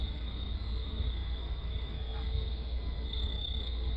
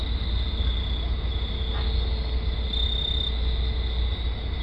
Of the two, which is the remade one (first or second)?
first